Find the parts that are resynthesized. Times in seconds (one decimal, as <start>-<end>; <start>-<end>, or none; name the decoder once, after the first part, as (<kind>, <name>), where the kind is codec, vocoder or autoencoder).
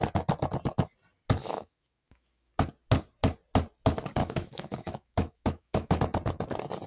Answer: 1.4-2.5 (autoencoder, DAC-VAE); 4.2-6.0